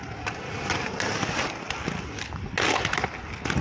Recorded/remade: recorded